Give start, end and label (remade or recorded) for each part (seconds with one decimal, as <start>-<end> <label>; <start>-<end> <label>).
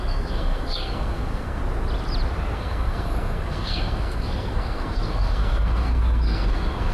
0.0-1.6 remade; 1.6-2.5 recorded; 2.5-6.9 remade